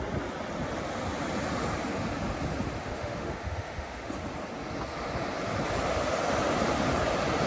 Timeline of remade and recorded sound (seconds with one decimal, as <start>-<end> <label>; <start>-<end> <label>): 0.0-2.9 recorded; 2.9-4.1 remade; 4.1-7.5 recorded